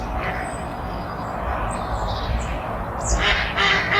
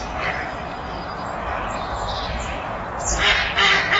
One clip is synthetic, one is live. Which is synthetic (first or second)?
second